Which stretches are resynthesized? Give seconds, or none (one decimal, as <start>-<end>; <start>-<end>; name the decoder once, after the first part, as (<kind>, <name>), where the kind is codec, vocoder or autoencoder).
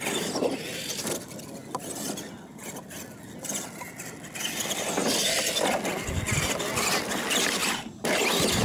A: 7.6-8.2 (vocoder, BigVGAN v2)